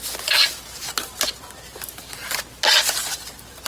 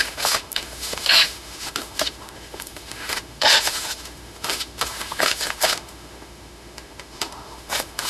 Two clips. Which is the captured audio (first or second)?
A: first